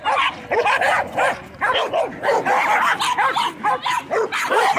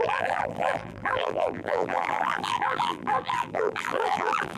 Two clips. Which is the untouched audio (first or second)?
first